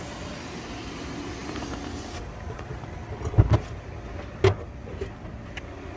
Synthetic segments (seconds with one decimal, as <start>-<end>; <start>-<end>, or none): none